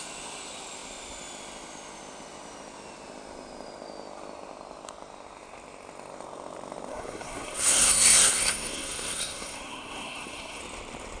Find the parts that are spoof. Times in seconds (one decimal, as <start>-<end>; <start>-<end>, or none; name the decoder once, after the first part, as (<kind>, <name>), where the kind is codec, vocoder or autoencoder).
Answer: 6.9-10.6 (codec, SNAC)